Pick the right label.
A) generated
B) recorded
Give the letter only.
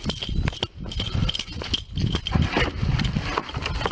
B